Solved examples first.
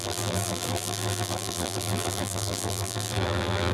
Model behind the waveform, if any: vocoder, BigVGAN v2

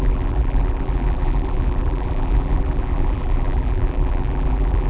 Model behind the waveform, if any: vocoder, BigVGAN v2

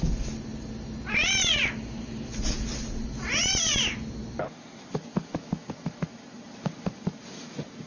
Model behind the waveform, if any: none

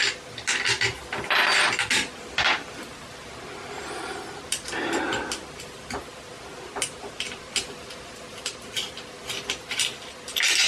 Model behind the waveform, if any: none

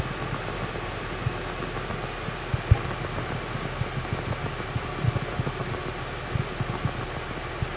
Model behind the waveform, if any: none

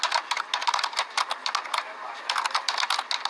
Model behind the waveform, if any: none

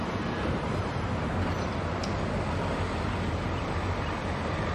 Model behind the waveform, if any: none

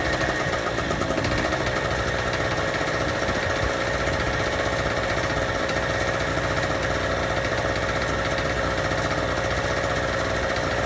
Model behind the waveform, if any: none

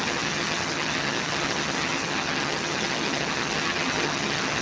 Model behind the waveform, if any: vocoder, HiFi-GAN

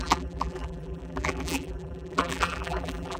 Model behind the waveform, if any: vocoder, BigVGAN v2